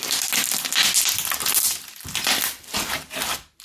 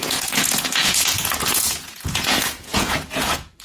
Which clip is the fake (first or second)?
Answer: second